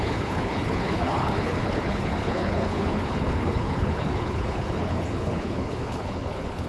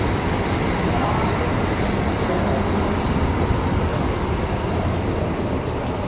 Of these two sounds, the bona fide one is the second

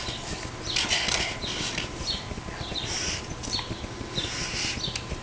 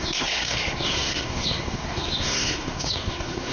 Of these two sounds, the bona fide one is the first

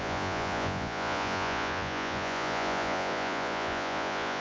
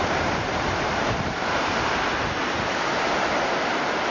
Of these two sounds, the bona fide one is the second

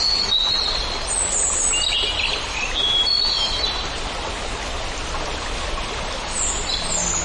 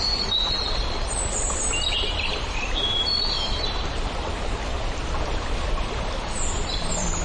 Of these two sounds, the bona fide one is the first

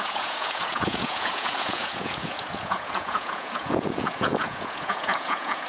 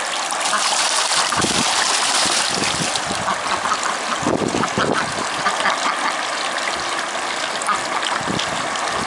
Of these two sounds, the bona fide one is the second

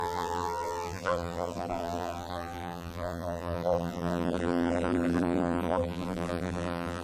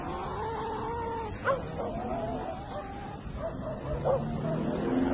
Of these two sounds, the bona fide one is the second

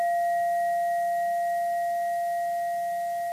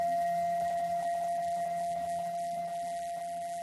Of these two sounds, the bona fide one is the first